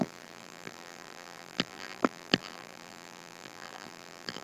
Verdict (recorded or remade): remade